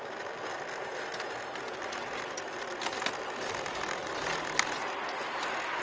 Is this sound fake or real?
real